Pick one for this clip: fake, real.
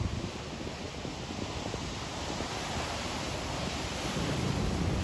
real